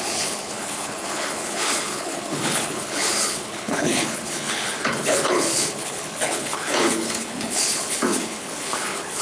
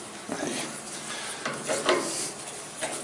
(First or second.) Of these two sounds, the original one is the second